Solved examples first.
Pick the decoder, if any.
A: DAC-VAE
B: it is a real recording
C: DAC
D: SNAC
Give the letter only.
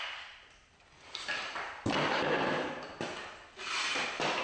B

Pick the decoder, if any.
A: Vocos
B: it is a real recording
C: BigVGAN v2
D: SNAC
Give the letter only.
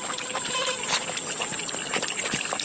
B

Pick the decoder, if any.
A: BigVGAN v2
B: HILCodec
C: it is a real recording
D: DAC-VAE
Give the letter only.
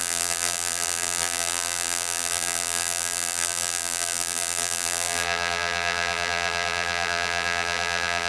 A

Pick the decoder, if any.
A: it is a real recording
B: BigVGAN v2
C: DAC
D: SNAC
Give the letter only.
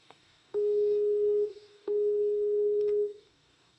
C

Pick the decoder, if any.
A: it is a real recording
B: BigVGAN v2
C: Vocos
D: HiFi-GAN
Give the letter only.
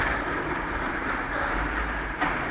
B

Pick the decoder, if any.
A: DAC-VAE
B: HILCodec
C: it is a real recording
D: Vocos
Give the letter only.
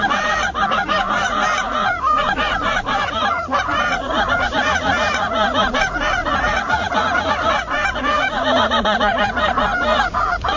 D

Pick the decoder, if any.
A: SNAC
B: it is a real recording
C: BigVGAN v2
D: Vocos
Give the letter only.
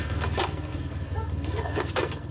A